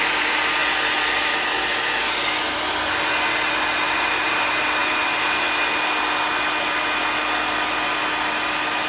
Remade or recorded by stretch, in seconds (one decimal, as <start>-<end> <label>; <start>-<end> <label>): 0.0-8.9 recorded